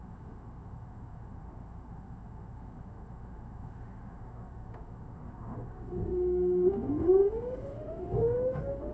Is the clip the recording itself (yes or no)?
no